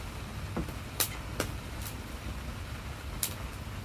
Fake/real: real